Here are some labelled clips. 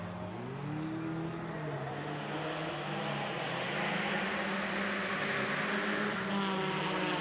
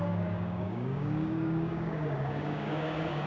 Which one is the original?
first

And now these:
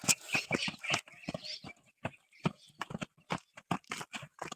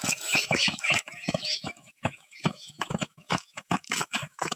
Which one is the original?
first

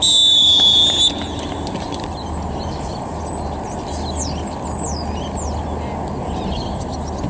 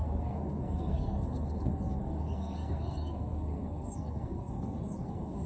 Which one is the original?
first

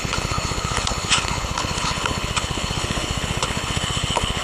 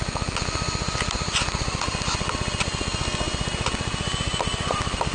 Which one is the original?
second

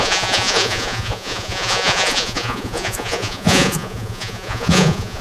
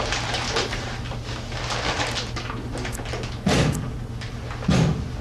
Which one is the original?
second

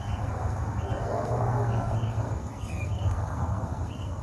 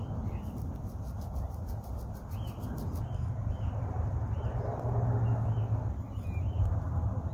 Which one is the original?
second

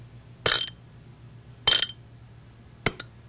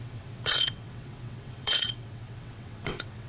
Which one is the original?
first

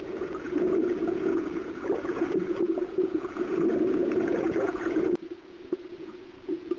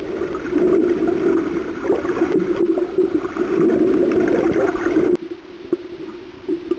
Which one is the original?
second